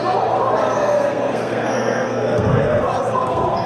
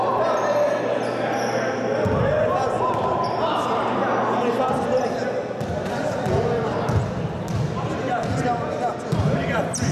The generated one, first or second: first